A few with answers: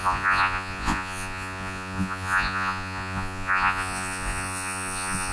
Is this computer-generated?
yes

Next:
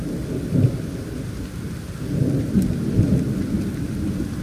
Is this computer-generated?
no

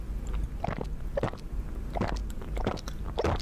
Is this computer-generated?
no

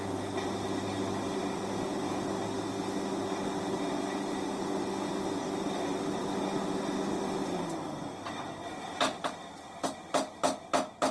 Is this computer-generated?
no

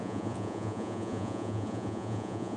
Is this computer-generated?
yes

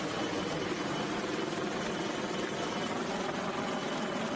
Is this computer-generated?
no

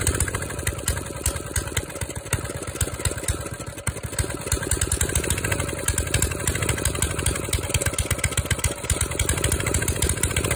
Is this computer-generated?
no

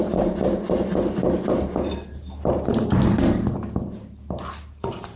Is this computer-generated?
no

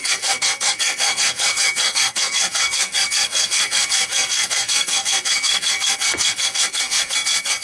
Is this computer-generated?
yes